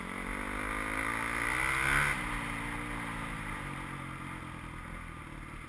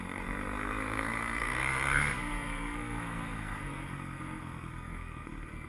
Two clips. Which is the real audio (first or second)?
first